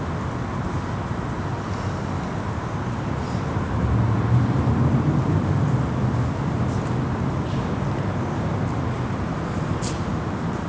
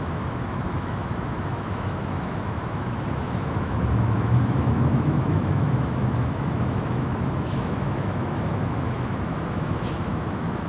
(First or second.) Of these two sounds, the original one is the first